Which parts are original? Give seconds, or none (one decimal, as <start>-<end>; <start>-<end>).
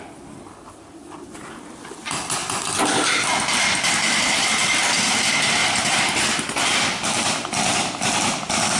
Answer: 0.0-8.8